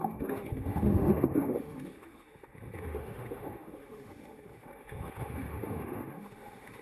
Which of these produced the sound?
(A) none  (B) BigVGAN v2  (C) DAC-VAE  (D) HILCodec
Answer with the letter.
C